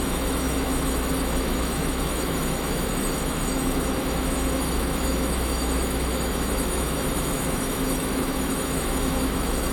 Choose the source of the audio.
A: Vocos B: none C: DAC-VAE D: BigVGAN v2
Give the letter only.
C